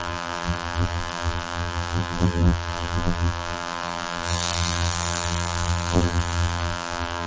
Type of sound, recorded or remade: remade